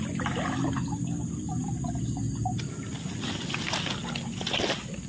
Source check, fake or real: real